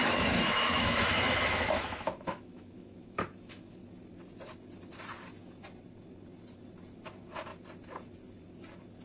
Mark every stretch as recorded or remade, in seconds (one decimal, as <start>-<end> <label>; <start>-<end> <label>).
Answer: 0.0-3.8 remade; 3.8-9.0 recorded